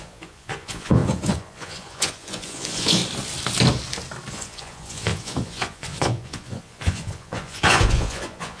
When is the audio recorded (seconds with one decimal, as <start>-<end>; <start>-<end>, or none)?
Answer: 3.0-4.3